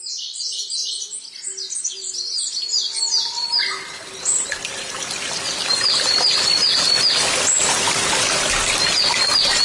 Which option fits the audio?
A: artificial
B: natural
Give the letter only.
B